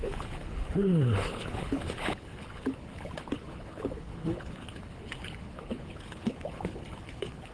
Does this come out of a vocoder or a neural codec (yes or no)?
yes